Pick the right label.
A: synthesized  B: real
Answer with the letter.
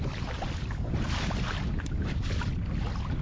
B